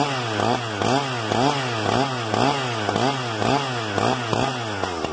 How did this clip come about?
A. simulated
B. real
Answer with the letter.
B